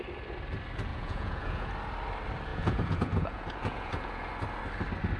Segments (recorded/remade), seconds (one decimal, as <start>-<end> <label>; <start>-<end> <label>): 0.0-0.9 recorded; 0.9-1.7 remade; 1.7-2.5 recorded; 2.5-4.3 remade; 4.3-5.2 recorded